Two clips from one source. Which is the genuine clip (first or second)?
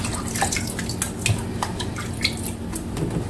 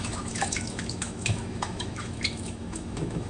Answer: first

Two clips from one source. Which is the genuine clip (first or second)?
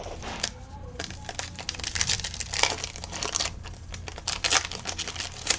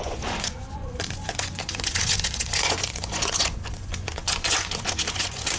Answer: first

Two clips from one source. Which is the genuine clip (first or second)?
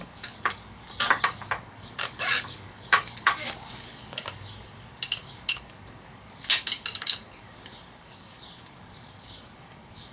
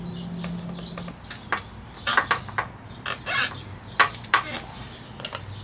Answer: second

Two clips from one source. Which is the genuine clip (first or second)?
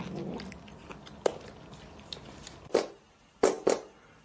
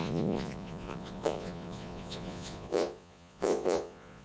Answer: first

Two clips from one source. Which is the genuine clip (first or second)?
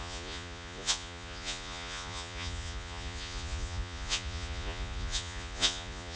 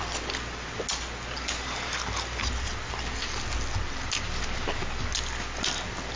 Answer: second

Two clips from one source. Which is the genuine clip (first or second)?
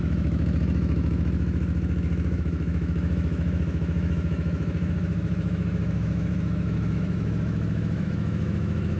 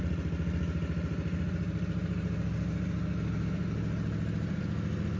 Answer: second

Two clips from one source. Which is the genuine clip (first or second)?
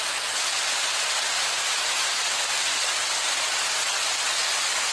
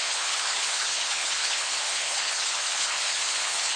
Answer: first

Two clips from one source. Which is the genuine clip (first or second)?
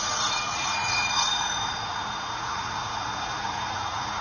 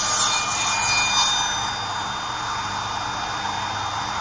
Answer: second